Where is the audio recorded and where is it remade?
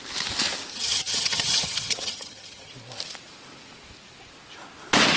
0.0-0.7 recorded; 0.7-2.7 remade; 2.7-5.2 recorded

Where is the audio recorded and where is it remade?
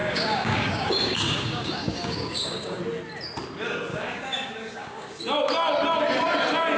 0.0-2.8 remade; 2.8-3.9 recorded; 3.9-5.2 remade; 5.2-6.8 recorded